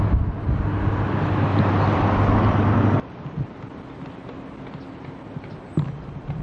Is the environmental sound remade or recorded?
recorded